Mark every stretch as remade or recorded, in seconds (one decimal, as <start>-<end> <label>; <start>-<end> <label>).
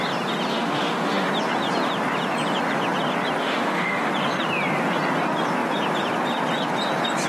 0.0-0.5 recorded; 0.5-1.3 remade; 1.3-3.4 recorded; 3.4-4.1 remade; 4.1-7.3 recorded